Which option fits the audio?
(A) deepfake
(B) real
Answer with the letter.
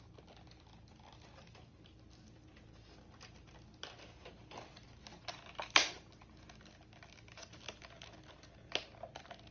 B